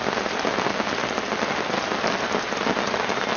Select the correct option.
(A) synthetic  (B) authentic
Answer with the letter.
B